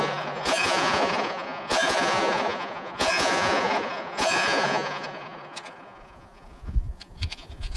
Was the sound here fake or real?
fake